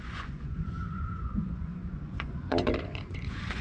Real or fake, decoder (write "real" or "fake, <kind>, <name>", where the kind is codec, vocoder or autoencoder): fake, vocoder, Vocos